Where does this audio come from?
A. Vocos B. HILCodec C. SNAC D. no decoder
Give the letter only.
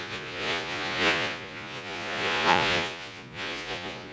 A